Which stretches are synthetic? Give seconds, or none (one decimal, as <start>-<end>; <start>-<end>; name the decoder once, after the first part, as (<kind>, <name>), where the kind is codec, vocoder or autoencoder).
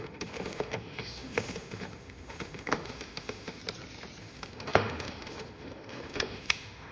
0.0-3.6 (autoencoder, DAC-VAE); 4.2-6.9